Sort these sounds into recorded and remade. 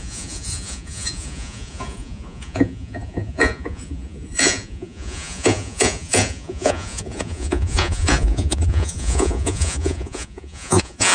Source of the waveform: remade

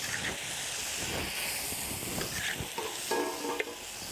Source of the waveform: recorded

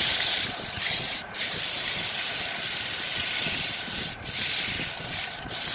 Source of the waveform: remade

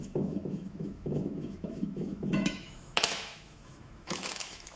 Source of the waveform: remade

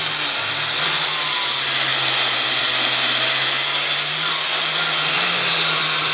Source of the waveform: recorded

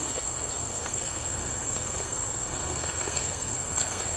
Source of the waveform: remade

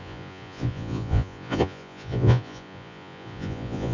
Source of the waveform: remade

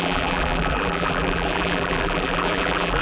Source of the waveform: remade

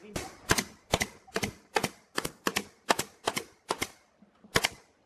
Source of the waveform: recorded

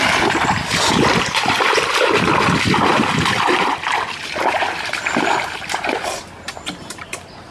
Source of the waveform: recorded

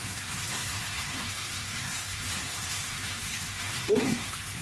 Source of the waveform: remade